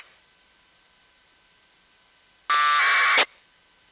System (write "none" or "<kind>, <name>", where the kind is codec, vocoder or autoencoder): none